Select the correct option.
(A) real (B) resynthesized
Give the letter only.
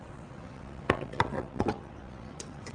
B